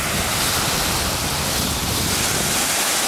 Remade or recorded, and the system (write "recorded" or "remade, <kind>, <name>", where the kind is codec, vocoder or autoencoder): recorded